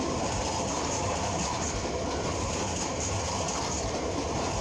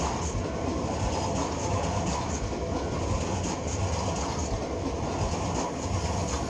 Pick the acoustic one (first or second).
second